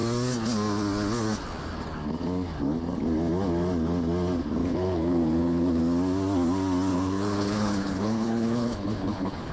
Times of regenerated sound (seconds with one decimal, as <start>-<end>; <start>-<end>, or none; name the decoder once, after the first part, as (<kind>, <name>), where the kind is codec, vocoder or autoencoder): 4.6-5.8 (codec, HILCodec); 6.9-9.5